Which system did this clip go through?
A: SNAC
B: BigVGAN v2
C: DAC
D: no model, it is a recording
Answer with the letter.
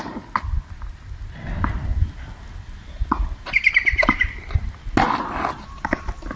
D